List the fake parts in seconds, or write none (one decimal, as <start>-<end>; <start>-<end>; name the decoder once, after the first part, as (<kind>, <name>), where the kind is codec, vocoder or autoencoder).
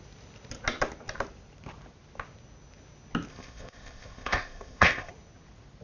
3.3-5.1 (codec, ZipCodec)